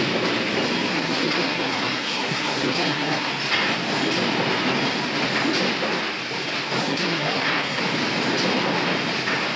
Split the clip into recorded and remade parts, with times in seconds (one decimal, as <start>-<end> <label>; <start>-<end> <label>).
0.0-0.9 recorded; 0.9-3.3 remade; 3.3-6.8 recorded; 6.8-7.8 remade; 7.8-9.6 recorded